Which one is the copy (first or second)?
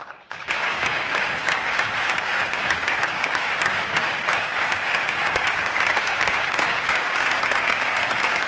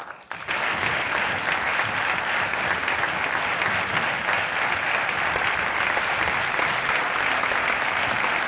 first